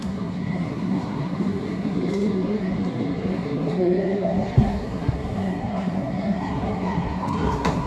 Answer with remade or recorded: remade